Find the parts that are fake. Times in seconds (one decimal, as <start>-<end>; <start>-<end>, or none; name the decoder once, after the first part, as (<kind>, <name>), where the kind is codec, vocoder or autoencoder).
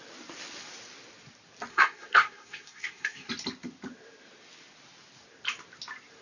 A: 1.7-3.3 (codec, SNAC)